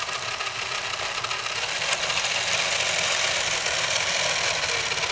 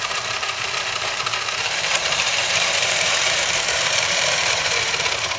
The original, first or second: first